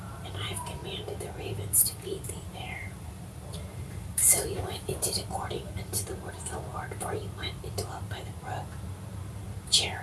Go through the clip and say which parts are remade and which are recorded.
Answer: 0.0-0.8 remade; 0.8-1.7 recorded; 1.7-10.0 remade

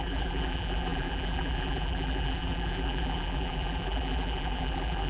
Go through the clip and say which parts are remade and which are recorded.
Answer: 0.0-5.1 remade

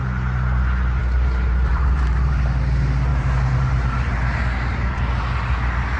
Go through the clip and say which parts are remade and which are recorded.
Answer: 0.0-1.0 recorded; 1.0-2.4 remade; 2.4-3.1 recorded; 3.1-5.0 remade; 5.0-6.0 recorded

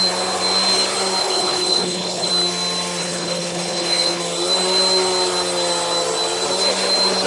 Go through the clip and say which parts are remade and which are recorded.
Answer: 0.0-1.2 recorded; 1.2-2.3 remade; 2.3-3.0 recorded; 3.0-4.2 remade; 4.2-7.3 recorded